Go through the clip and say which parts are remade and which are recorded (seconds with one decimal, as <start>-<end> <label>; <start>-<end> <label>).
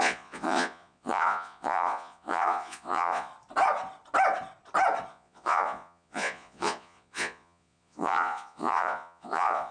0.0-3.3 remade; 3.3-5.1 recorded; 5.1-9.7 remade